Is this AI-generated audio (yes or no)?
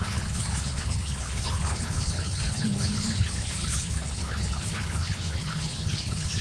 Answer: yes